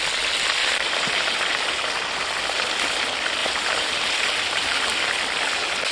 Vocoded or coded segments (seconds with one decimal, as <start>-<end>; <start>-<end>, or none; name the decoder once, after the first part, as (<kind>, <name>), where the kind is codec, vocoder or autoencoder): 0.6-1.8 (vocoder, BigVGAN v2); 3.4-5.1